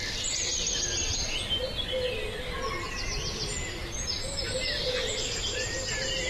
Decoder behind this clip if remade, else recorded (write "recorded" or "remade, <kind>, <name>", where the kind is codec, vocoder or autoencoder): recorded